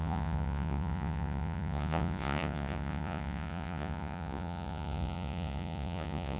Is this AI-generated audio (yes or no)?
yes